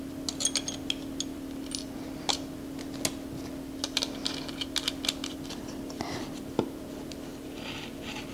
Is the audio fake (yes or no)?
no